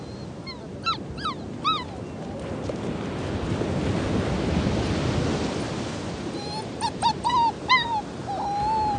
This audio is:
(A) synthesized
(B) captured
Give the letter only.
B